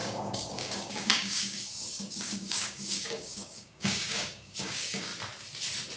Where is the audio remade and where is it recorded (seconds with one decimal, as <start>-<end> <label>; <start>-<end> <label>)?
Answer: 0.0-5.1 remade; 5.1-6.0 recorded